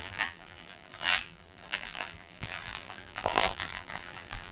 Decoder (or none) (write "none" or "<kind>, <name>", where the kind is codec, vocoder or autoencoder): vocoder, BigVGAN v2